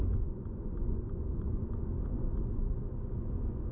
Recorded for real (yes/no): no